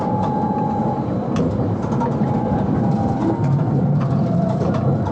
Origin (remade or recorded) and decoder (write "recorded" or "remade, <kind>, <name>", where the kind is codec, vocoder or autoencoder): remade, vocoder, BigVGAN v2